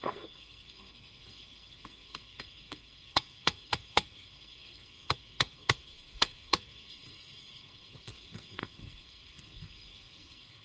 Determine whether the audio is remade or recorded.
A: remade